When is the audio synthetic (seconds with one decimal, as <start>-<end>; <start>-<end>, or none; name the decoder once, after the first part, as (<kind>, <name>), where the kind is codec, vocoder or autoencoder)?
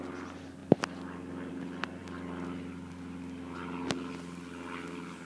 none